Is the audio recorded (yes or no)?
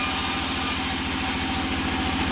yes